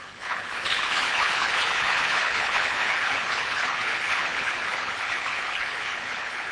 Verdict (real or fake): fake